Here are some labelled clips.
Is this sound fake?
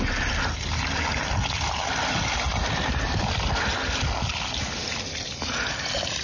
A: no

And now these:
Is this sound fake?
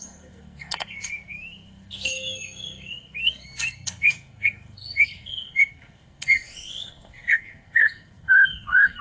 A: yes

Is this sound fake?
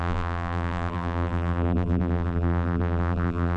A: yes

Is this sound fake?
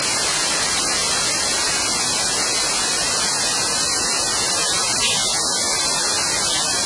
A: no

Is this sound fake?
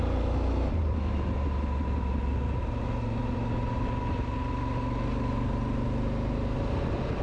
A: no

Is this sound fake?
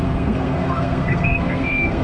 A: yes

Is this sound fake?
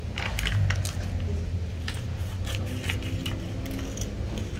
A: no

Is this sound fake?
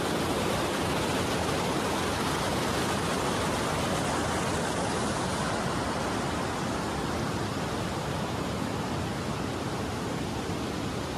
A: no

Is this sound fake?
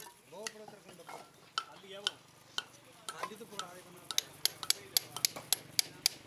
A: no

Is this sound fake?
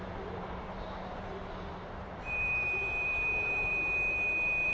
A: yes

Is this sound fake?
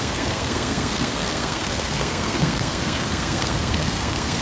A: yes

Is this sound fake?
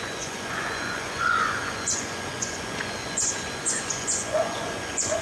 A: yes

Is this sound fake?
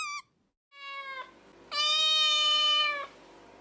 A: no